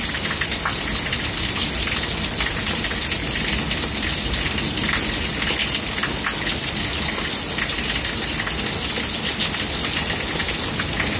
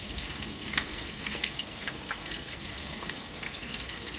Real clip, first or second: first